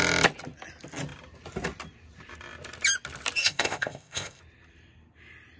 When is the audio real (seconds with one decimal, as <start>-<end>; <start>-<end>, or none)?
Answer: 0.0-3.4; 4.4-5.6